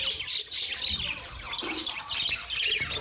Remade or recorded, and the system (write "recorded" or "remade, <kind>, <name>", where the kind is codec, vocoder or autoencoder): recorded